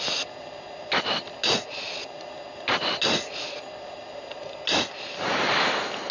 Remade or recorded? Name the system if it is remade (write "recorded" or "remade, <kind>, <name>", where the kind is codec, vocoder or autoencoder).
recorded